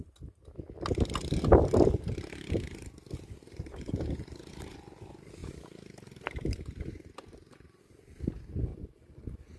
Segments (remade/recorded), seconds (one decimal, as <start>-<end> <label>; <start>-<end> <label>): 0.0-3.4 recorded; 3.4-4.5 remade; 4.5-5.4 recorded; 5.4-7.8 remade; 7.8-8.7 recorded; 8.7-9.6 remade